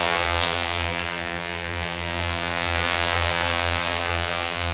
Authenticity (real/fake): fake